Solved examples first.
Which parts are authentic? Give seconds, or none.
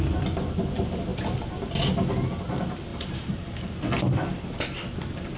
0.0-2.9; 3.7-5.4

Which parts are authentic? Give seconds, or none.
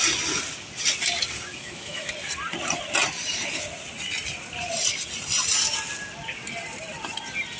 0.0-1.5; 2.1-7.6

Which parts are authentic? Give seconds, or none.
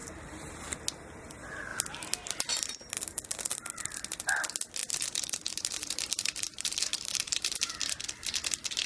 0.6-4.8; 7.7-8.9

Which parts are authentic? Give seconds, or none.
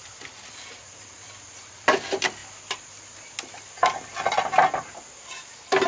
2.4-5.9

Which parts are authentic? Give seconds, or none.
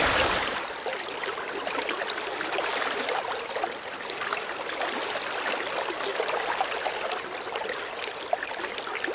0.0-9.1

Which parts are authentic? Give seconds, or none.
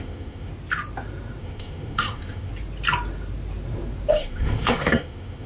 0.5-1.4; 2.5-4.1